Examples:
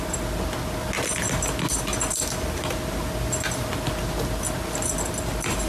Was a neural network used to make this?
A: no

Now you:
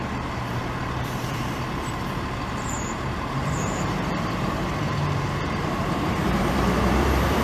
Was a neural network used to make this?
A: yes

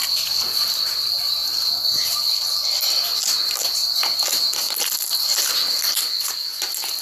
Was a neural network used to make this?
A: no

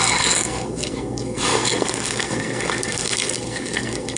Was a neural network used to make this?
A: yes